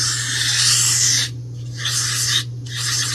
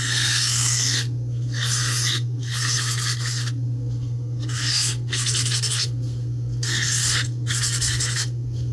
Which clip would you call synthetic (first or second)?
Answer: second